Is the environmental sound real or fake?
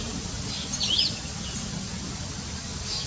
real